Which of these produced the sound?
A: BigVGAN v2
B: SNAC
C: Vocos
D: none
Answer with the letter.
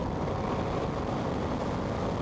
D